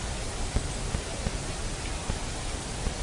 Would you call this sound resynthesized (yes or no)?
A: no